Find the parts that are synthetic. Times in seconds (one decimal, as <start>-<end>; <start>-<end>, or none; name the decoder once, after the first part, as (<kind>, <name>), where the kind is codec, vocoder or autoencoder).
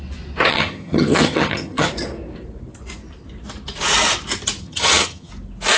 0.5-1.9 (vocoder, HiFi-GAN); 4.6-5.3